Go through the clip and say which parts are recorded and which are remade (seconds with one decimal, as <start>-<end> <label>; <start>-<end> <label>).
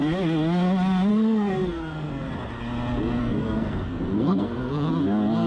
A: 0.0-1.1 recorded; 1.1-2.3 remade; 2.3-3.2 recorded; 3.2-4.9 remade; 4.9-5.5 recorded